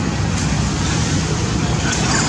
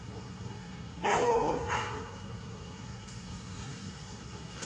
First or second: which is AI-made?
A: second